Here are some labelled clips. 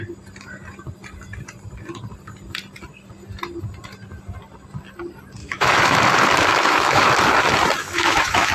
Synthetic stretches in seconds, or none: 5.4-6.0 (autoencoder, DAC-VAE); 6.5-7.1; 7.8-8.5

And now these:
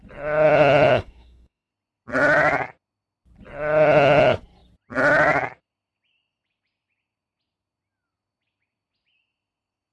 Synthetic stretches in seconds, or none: 0.9-1.7 (autoencoder, DAC-VAE)

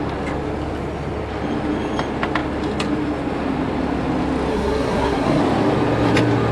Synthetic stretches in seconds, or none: 4.5-5.4 (codec, SNAC)